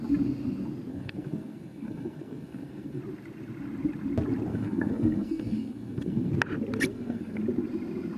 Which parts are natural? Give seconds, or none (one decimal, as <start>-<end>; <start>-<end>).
0.0-0.9; 3.0-4.5; 6.3-6.9; 7.4-8.2